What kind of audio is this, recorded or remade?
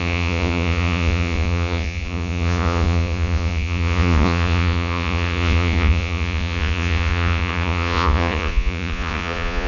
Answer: remade